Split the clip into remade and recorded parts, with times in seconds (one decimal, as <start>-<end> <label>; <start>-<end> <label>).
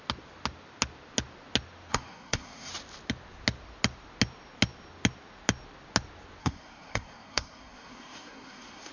0.0-1.9 recorded; 1.9-2.7 remade; 2.7-6.4 recorded; 6.4-8.9 remade